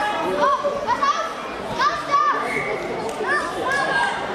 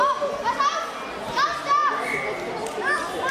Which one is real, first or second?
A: second